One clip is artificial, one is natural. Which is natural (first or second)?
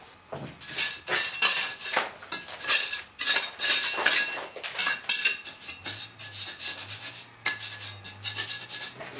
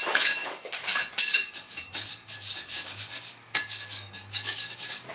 first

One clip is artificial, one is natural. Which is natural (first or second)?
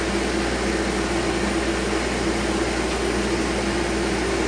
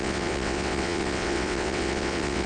first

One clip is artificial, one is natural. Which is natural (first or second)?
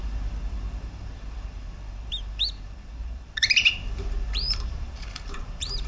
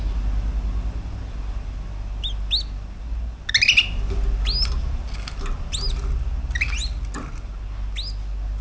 second